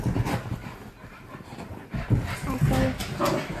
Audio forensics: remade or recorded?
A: recorded